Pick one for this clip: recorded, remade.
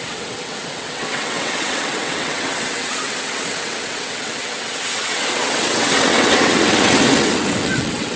remade